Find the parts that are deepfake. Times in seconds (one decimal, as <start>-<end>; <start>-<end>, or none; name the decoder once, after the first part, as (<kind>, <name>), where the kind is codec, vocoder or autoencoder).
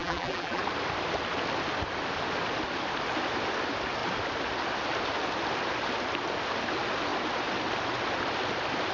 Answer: 0.0-0.6 (vocoder, BigVGAN v2)